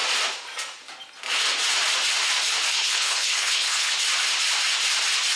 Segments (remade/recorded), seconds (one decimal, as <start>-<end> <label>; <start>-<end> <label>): 0.0-2.7 recorded; 2.7-3.9 remade; 3.9-5.4 recorded